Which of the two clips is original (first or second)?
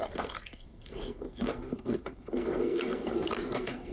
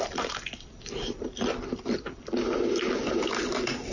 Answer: second